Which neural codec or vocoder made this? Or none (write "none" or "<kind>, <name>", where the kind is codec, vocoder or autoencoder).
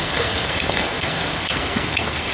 codec, SNAC